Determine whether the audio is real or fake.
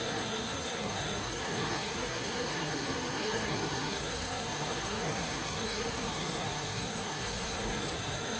fake